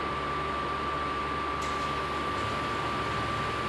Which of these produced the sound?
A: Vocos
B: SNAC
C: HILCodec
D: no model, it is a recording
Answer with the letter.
D